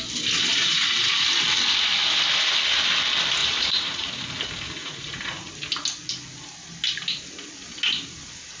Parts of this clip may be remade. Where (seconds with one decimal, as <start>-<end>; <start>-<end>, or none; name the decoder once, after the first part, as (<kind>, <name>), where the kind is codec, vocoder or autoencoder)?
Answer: 0.5-1.2 (vocoder, Vocos); 3.4-4.1; 4.8-5.5